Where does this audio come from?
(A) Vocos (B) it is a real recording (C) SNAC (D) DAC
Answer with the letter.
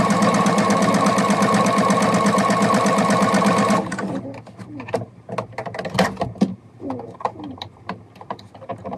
B